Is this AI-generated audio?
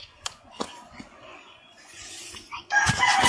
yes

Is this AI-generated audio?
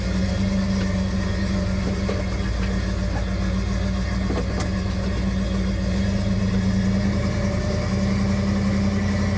no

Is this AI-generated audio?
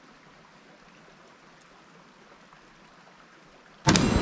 no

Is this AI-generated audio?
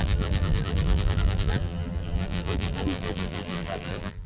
yes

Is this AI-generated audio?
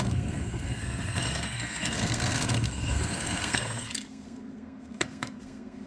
yes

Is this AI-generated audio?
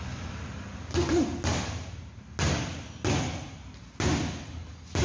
no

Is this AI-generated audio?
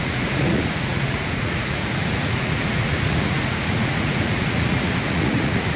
yes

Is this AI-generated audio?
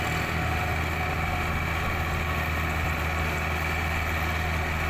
no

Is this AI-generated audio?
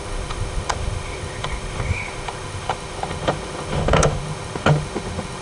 yes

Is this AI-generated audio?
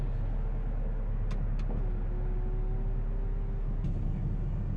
no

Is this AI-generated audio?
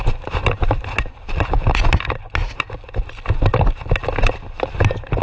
no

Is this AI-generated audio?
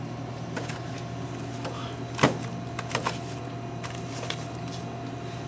no